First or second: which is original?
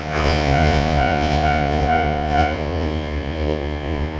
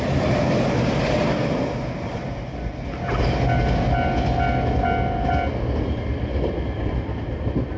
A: second